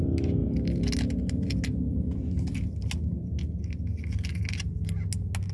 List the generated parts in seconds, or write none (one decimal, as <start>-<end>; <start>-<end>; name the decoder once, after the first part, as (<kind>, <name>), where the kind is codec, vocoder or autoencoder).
none